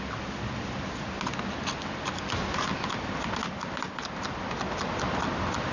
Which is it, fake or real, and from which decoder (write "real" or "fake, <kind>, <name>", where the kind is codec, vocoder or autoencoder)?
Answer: real